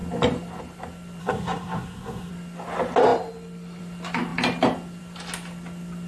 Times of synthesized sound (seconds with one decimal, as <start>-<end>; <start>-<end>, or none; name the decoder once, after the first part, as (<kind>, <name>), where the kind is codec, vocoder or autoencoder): 1.2-2.3 (codec, SNAC)